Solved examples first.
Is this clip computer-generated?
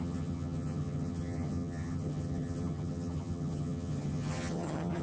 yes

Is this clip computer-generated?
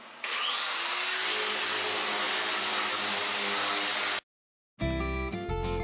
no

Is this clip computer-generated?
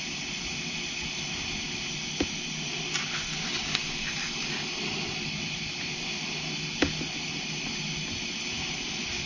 no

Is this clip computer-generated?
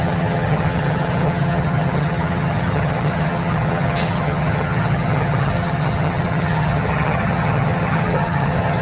yes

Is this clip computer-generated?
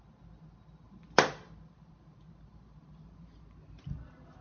no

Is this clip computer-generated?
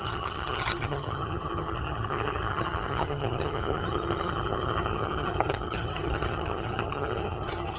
yes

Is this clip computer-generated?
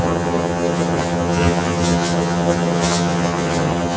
yes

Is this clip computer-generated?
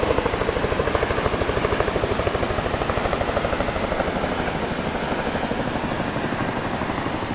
no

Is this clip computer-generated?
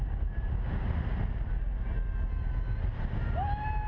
no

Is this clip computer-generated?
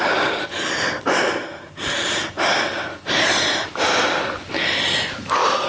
no